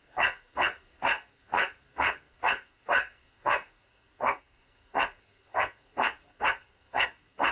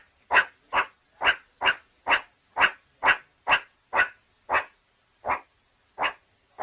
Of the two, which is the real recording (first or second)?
second